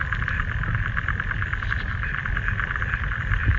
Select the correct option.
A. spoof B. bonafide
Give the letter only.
B